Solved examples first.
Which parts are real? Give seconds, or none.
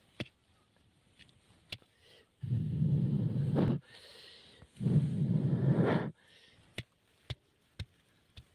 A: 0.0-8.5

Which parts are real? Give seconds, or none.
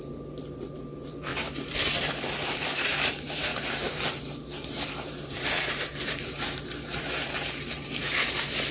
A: none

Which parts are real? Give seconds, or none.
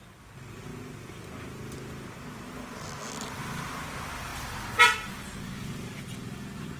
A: 0.0-6.8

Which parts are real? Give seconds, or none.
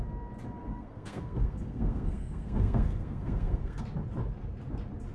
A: 0.0-0.7; 3.8-5.1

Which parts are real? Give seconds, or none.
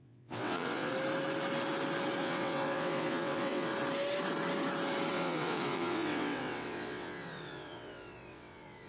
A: 0.9-2.2; 3.7-5.1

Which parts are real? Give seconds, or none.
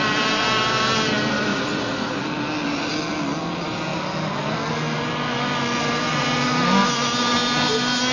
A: 0.0-1.5; 2.2-8.1